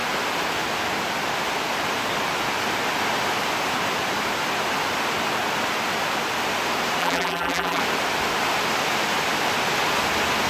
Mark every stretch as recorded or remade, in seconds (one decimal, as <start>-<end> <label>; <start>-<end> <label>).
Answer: 0.0-7.0 recorded; 7.0-7.8 remade; 7.8-10.5 recorded